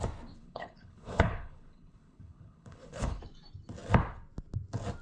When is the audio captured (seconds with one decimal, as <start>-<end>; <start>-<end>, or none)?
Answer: 0.0-0.4; 3.2-5.0